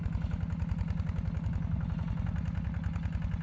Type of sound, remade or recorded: recorded